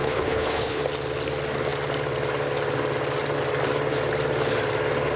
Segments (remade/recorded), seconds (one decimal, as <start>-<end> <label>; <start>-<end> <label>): 0.0-0.8 remade; 0.8-5.2 recorded